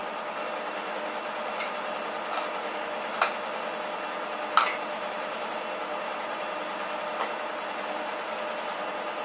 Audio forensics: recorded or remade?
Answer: recorded